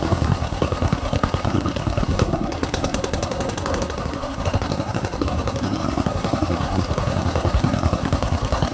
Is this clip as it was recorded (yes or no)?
no